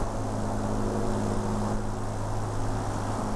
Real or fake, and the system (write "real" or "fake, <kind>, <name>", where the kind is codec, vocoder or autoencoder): real